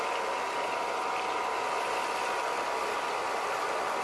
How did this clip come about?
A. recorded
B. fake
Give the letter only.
A